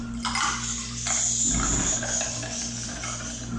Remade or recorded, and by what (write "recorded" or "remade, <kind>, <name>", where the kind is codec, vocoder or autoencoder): recorded